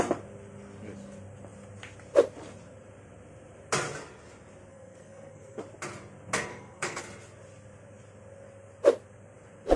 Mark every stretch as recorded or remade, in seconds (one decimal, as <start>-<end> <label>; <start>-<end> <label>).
0.0-4.7 recorded; 4.7-5.6 remade; 5.6-6.5 recorded; 6.5-7.0 remade; 7.0-9.8 recorded